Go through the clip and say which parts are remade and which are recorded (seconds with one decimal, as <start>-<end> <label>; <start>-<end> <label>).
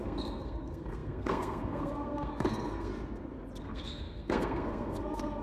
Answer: 0.0-2.9 remade; 2.9-3.6 recorded; 3.6-5.4 remade